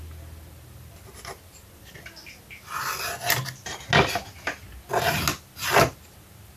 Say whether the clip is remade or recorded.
recorded